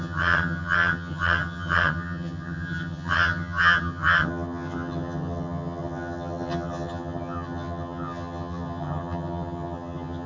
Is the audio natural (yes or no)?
no